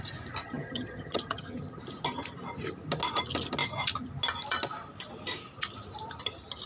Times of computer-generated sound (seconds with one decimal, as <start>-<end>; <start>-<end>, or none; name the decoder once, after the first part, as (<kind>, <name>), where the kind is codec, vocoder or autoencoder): 0.4-1.8 (vocoder, HiFi-GAN)